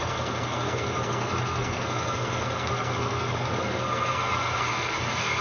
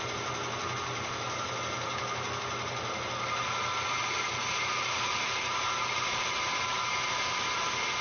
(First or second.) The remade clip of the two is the first